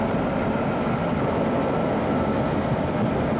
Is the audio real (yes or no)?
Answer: yes